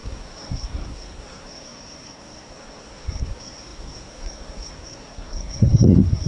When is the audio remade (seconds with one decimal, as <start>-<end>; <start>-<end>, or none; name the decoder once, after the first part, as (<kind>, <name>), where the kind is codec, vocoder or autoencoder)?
0.0-6.3 (codec, SNAC)